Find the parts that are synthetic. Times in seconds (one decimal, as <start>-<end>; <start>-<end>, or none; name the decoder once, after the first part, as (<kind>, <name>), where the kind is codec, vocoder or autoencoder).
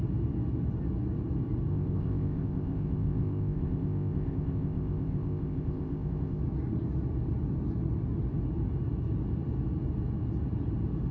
1.7-6.4 (codec, ZipCodec)